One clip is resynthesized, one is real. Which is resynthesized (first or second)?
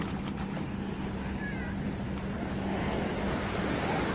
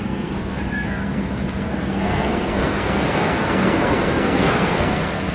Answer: second